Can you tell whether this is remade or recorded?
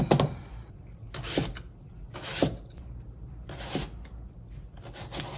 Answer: recorded